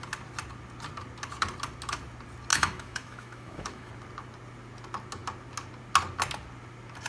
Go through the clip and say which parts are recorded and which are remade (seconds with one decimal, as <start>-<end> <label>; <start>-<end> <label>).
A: 0.0-2.5 recorded; 2.5-3.9 remade; 3.9-7.1 recorded